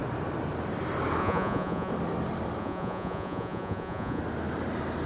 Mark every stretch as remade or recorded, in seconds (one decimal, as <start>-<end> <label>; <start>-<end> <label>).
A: 0.0-1.2 recorded; 1.2-1.9 remade; 1.9-2.6 recorded; 2.6-4.2 remade; 4.2-5.1 recorded